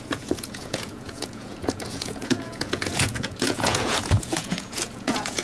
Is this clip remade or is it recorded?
remade